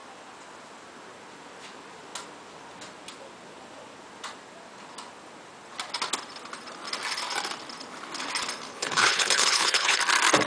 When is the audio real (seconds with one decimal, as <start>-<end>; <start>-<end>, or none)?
0.0-8.7; 10.0-10.5